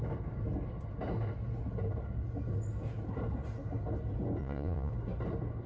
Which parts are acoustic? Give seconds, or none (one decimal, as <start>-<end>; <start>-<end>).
0.0-4.4; 4.9-5.7